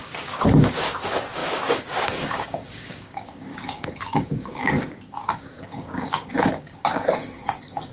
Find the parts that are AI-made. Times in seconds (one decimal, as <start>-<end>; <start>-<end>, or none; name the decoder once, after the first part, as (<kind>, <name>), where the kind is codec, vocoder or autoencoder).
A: 0.0-7.9 (codec, DAC)